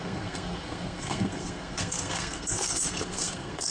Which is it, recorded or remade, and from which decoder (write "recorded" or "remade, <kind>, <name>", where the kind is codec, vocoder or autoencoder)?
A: remade, codec, SNAC